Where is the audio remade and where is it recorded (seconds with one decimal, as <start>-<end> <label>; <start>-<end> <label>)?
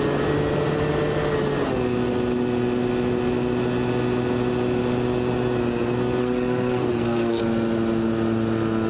0.0-6.2 recorded; 6.2-7.4 remade; 7.4-8.9 recorded